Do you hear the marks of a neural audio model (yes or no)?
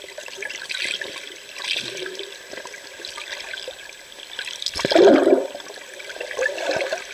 no